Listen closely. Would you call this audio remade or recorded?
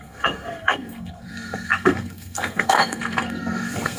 remade